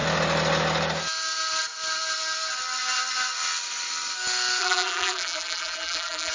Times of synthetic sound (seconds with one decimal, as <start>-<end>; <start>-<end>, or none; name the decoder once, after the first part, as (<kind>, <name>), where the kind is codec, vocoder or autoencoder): 4.6-6.3 (vocoder, BigVGAN v2)